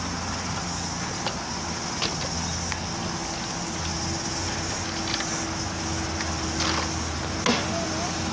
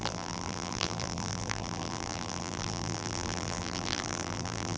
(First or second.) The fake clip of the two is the second